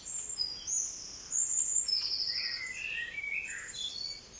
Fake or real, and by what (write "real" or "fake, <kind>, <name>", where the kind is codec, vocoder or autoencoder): real